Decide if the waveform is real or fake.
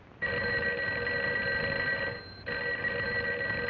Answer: real